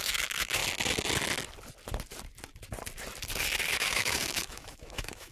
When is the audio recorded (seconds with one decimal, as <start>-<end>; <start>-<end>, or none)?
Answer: 0.6-3.8